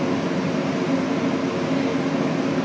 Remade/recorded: recorded